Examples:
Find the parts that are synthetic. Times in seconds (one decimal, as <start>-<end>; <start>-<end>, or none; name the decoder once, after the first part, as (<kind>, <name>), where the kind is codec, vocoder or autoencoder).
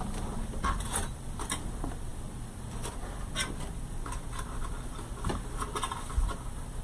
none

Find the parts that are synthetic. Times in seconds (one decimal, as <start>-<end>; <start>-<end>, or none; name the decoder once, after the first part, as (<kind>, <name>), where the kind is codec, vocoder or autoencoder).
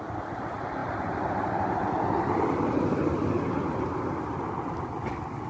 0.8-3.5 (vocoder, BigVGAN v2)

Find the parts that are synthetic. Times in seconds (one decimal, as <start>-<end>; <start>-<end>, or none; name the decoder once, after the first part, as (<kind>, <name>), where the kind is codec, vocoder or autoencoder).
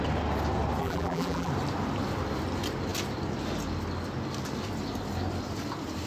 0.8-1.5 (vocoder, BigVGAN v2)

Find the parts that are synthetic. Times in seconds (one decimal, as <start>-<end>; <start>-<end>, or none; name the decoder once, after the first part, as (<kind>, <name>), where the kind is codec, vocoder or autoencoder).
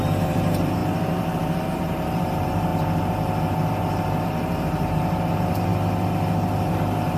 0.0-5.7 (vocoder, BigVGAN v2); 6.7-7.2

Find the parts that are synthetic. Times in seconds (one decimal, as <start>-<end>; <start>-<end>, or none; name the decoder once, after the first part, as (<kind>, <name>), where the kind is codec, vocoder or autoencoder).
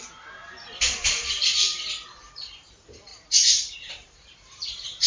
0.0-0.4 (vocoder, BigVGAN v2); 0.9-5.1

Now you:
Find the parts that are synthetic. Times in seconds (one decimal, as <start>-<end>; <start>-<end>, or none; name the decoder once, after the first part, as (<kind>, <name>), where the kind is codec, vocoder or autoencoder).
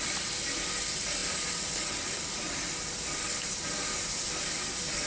none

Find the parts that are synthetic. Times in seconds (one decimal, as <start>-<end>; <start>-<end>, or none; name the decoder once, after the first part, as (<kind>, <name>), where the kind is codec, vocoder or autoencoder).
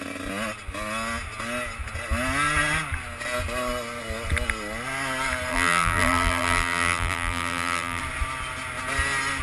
5.5-8.0 (vocoder, BigVGAN v2)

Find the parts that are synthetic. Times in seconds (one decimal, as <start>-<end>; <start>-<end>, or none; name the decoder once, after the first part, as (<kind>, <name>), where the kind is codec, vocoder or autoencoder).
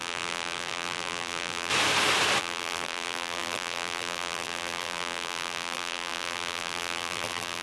0.0-1.7 (vocoder, BigVGAN v2); 2.4-7.6